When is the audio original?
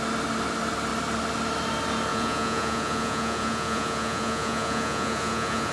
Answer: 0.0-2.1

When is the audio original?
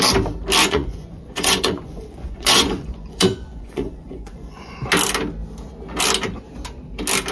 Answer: 0.0-0.6; 4.8-7.3